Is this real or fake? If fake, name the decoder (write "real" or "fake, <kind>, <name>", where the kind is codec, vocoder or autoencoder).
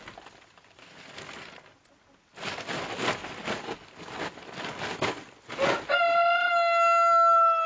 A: real